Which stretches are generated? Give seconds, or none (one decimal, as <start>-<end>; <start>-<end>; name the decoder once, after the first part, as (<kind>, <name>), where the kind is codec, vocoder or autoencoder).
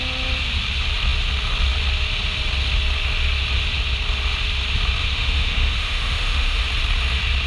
5.0-6.6 (autoencoder, DAC-VAE)